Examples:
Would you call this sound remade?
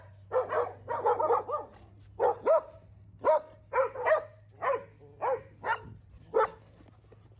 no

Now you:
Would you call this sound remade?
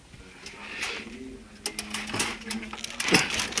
no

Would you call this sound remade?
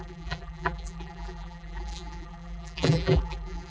yes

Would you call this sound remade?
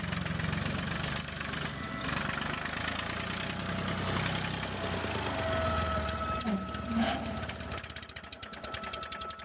no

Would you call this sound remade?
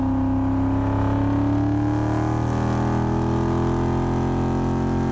no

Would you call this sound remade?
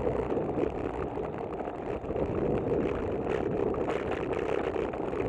yes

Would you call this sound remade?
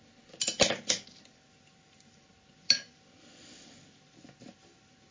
no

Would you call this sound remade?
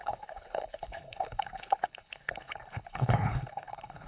yes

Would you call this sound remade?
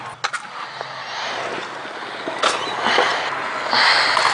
no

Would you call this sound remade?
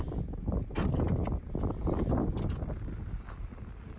no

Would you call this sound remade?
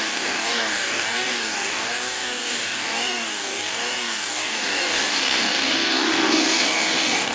yes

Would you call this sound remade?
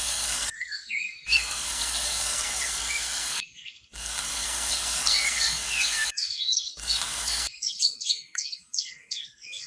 yes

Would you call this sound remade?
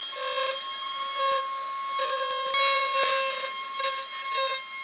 no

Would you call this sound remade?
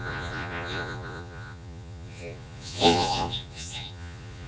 yes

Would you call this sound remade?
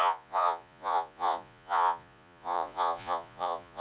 yes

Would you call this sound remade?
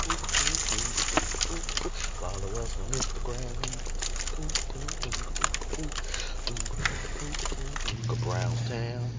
no